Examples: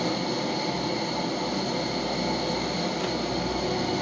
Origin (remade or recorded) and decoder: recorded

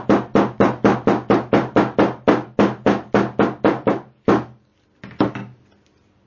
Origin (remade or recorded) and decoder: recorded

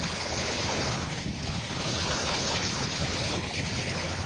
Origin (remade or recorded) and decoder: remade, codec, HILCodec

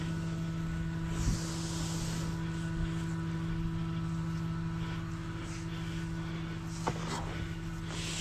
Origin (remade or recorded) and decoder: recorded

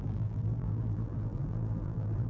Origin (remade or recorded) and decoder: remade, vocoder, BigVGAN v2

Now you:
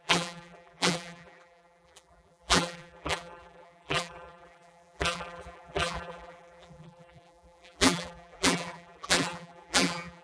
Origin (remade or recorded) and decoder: remade, vocoder, BigVGAN v2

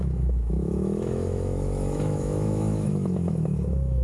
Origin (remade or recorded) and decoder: remade, autoencoder, DAC-VAE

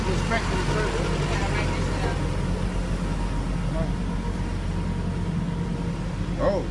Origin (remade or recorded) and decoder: recorded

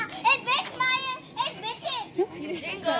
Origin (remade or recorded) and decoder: recorded